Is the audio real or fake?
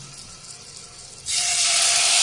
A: real